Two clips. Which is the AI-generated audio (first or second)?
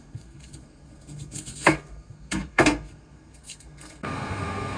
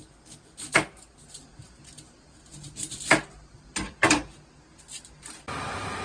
first